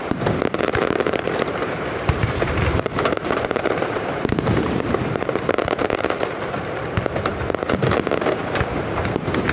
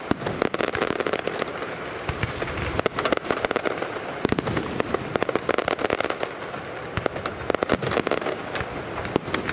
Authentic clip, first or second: second